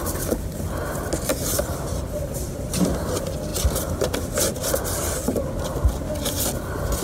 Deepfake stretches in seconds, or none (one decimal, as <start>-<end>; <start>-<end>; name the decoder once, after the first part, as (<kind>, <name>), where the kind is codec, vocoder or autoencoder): 1.3-3.0 (vocoder, BigVGAN v2)